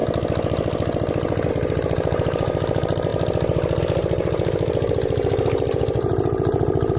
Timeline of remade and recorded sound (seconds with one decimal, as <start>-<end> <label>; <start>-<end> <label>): 0.0-1.5 recorded; 1.5-3.1 remade; 3.1-3.8 recorded; 3.8-7.0 remade

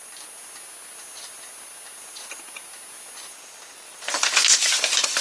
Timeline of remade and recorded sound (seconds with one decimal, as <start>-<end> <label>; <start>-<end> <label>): 0.0-3.3 recorded; 3.3-4.4 remade; 4.4-5.2 recorded

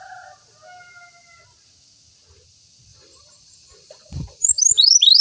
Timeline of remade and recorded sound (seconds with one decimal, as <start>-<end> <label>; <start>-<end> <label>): 0.0-2.9 recorded; 2.9-5.2 remade

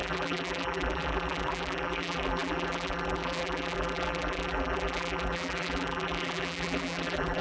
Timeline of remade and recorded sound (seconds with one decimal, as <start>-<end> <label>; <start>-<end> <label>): 0.0-7.4 remade

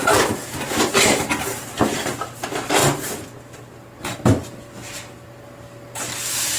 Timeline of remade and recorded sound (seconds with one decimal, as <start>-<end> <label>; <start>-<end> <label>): 0.0-2.8 remade; 2.8-4.0 recorded; 4.0-6.6 remade

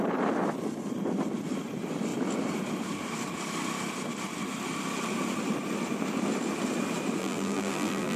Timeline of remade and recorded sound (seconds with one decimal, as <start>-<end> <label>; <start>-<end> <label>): 0.0-7.2 recorded; 7.2-8.2 remade

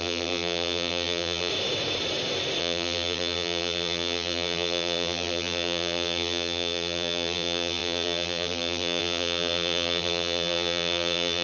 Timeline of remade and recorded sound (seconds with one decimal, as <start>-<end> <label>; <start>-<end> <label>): 0.0-1.5 remade; 1.5-2.6 recorded; 2.6-11.4 remade